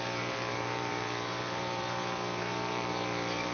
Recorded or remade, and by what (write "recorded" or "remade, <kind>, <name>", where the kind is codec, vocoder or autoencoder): remade, vocoder, BigVGAN v2